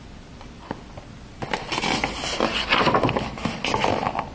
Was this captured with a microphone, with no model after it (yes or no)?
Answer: yes